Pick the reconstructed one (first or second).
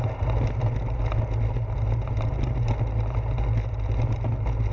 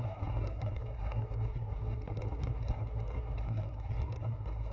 second